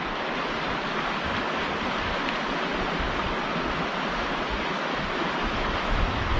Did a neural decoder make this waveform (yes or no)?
no